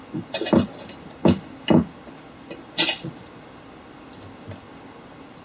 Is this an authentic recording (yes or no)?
yes